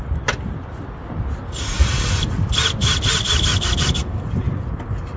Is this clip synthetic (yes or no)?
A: no